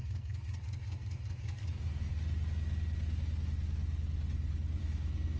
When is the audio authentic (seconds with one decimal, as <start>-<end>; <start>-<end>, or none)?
2.1-4.8